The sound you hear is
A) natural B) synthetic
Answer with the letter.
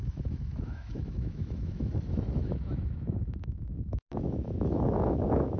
B